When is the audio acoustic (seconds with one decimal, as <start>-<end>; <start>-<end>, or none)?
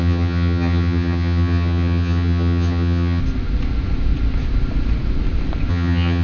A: 3.2-5.7